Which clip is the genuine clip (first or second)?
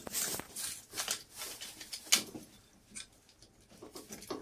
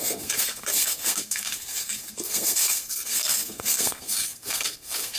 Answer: first